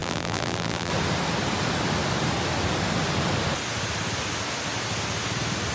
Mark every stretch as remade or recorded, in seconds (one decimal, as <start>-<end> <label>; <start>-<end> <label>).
0.0-0.9 remade; 0.9-5.7 recorded